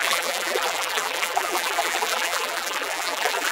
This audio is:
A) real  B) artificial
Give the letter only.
B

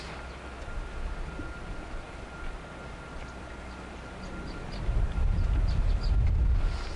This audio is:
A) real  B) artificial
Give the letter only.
A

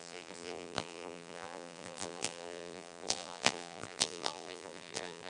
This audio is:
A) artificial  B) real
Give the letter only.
A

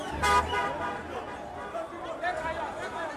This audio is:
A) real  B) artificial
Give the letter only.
A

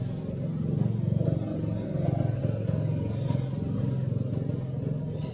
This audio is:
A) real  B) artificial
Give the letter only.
A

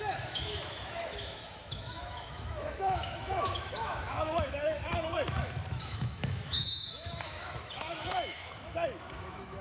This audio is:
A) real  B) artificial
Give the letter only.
B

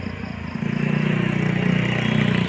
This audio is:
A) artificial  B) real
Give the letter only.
B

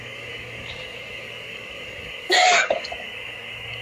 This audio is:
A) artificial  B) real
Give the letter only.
A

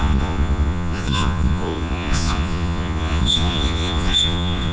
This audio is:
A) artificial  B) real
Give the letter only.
A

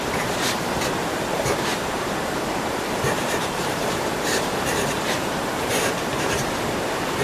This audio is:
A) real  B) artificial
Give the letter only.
B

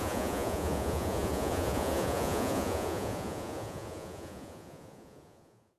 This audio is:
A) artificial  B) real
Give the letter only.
A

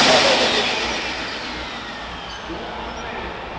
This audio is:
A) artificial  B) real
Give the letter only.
B